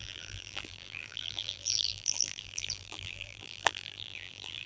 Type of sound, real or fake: fake